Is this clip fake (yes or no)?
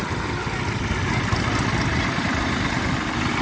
no